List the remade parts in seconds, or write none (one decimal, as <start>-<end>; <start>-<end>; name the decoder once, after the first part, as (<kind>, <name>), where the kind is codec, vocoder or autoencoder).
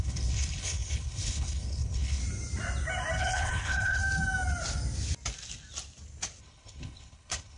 0.0-2.2 (codec, HILCodec); 3.2-4.0; 6.4-7.6